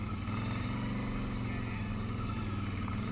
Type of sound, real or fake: real